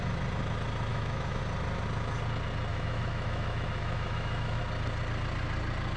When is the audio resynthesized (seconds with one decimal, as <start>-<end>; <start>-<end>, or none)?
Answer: 0.9-1.4; 2.7-4.6